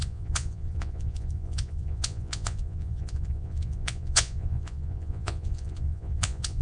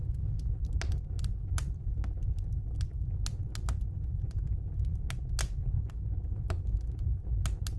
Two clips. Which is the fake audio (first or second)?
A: first